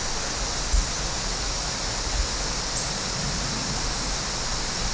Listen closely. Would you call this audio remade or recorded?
recorded